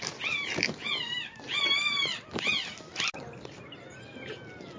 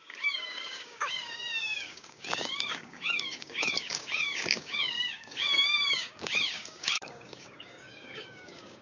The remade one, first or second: second